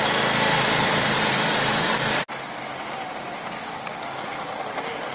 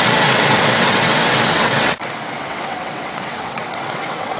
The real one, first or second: first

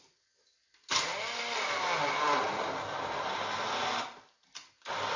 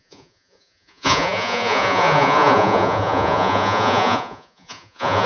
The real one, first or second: first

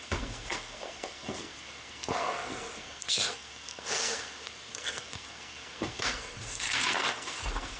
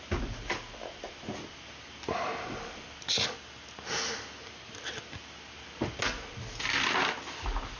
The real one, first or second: second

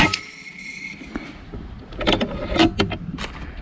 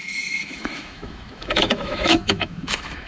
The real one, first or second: first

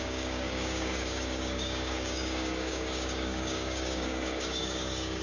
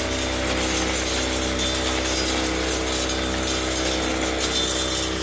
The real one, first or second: second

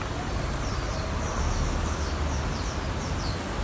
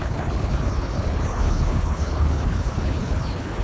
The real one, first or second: first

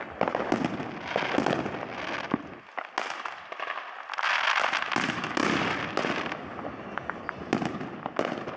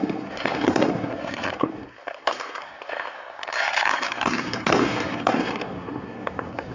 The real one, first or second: first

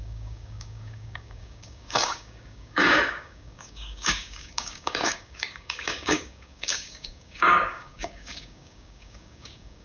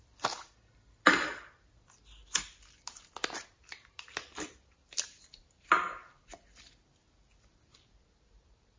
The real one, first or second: second